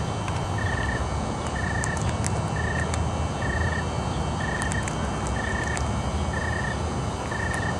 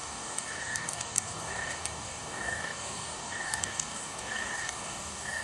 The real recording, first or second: first